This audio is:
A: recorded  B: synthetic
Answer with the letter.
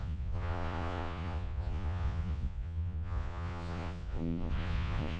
B